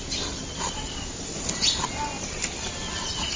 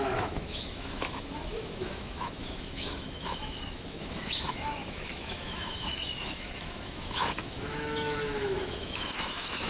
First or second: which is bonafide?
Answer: first